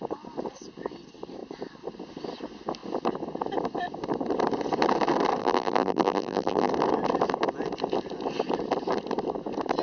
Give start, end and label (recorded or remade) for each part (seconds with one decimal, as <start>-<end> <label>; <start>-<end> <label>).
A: 0.0-5.4 recorded; 5.4-6.7 remade; 6.7-9.8 recorded